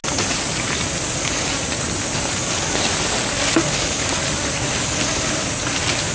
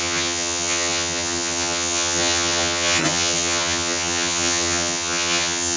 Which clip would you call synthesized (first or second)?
second